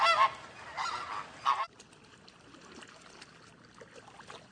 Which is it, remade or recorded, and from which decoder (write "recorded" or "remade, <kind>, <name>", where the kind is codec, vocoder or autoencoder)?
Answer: recorded